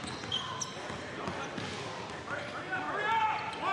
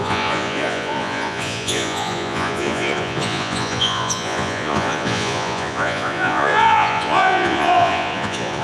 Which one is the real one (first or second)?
first